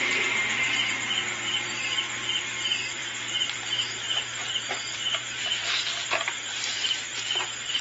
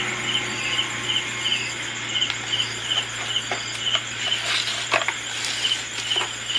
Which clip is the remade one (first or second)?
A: first